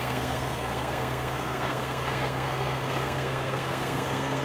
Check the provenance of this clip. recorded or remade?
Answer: remade